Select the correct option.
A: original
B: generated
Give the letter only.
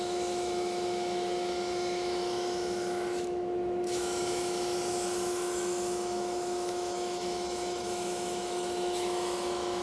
B